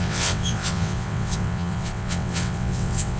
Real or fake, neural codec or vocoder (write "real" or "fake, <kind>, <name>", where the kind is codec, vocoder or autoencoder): fake, vocoder, WaveNeXt